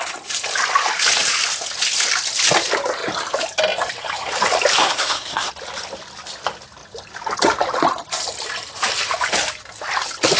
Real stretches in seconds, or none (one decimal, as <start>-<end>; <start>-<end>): 0.0-4.8; 5.5-10.4